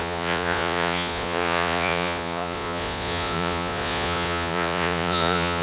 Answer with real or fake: fake